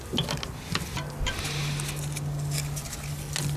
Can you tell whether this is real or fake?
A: real